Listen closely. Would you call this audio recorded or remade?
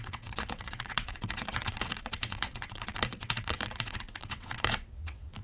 remade